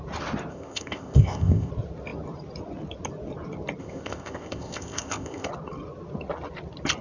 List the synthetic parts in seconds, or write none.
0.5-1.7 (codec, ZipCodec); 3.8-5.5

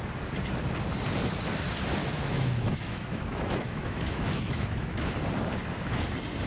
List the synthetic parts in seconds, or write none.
2.0-5.1 (autoencoder, DAC-VAE)

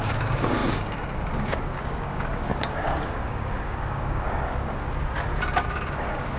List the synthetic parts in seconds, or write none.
0.0-6.4 (codec, DAC)